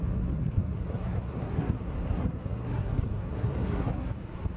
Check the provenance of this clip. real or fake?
fake